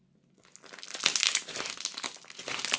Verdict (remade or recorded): recorded